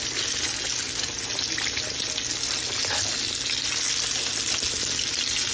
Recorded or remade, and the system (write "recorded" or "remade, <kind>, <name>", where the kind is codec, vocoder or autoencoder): recorded